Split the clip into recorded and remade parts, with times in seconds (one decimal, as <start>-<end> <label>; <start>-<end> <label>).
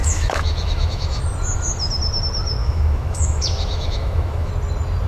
0.0-1.2 remade; 1.2-2.6 recorded; 2.6-4.5 remade; 4.5-5.1 recorded